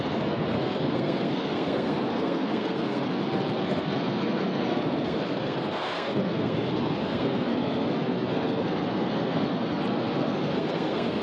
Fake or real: fake